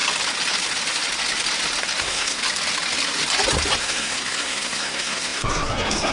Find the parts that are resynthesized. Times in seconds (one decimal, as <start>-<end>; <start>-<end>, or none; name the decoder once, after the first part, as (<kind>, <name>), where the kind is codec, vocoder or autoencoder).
2.0-2.4 (codec, SNAC); 3.8-6.1